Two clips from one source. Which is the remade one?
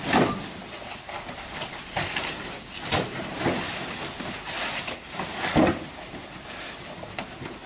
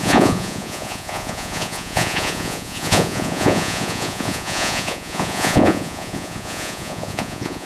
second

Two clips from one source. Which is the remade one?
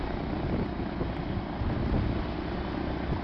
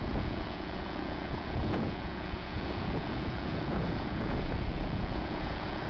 second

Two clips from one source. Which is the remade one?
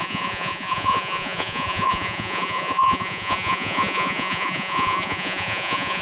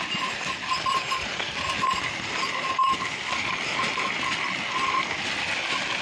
first